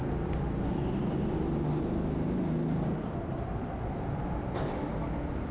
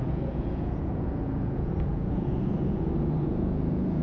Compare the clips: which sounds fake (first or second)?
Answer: second